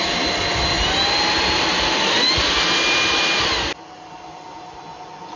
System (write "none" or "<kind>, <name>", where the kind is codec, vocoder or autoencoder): none